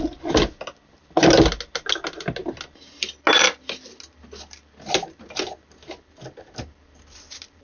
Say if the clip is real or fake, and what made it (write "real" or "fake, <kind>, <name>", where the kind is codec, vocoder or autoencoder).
real